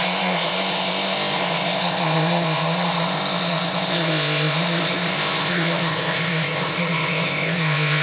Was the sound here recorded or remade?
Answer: remade